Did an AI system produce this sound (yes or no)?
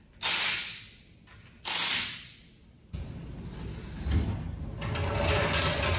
no